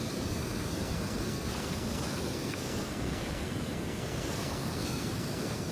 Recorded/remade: remade